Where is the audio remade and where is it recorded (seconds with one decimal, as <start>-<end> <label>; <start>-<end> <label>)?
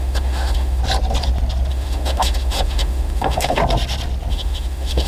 0.0-0.8 remade; 0.8-1.7 recorded; 1.7-3.6 remade; 3.6-4.3 recorded; 4.3-5.1 remade